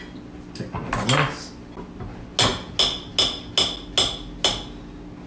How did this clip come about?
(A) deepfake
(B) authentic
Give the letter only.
B